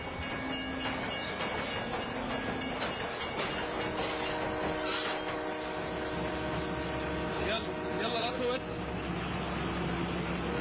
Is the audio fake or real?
real